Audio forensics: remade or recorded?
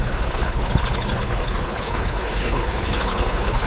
remade